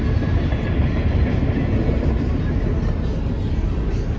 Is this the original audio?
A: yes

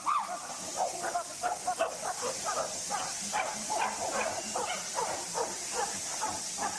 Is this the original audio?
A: yes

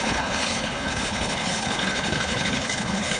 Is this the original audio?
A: no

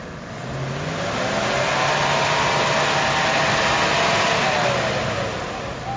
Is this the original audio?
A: yes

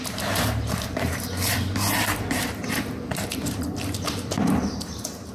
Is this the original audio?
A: no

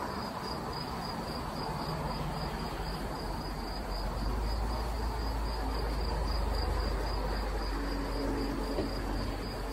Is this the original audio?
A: yes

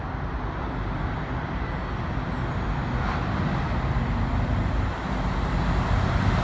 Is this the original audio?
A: yes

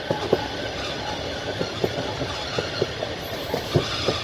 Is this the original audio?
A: yes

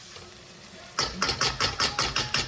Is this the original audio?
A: yes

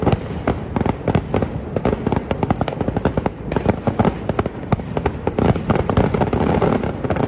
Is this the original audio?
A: yes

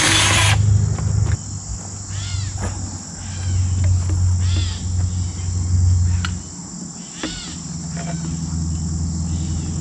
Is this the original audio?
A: yes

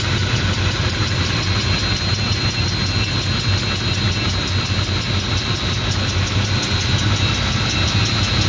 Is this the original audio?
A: yes